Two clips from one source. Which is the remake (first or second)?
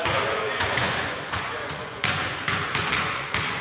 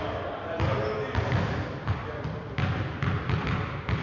first